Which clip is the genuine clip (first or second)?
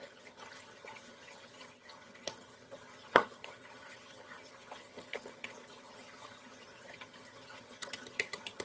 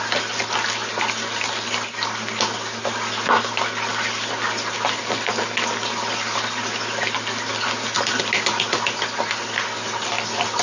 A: second